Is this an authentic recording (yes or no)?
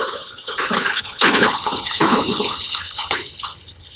no